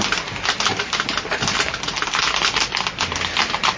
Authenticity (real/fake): real